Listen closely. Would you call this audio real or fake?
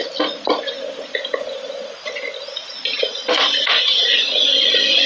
real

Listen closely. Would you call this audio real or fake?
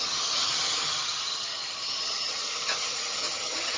fake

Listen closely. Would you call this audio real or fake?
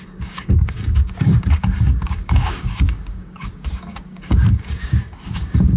fake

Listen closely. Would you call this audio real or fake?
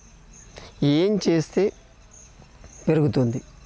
real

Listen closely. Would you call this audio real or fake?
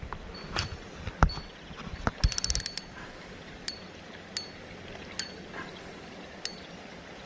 real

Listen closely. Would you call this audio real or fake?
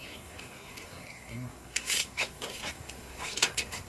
fake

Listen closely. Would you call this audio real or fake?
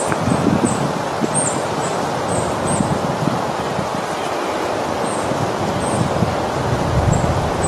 real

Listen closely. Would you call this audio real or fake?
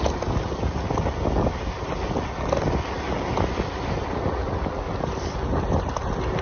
real